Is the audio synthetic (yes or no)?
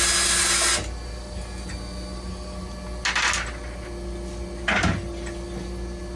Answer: no